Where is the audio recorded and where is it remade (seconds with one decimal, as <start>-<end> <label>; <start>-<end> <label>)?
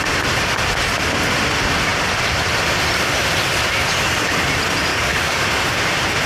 0.0-4.9 recorded; 4.9-5.5 remade; 5.5-6.3 recorded